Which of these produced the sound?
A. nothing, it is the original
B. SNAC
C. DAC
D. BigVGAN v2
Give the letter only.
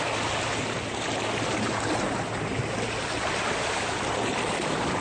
A